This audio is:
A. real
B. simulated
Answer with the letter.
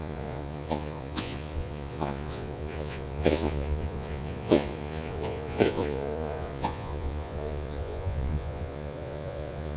B